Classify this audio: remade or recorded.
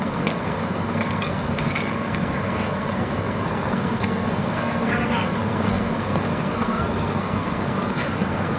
remade